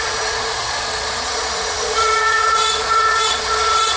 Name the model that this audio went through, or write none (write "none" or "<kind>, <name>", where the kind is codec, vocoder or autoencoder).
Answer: vocoder, Vocos